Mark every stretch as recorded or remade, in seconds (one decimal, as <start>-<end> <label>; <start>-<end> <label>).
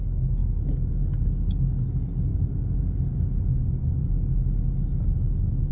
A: 0.0-5.7 recorded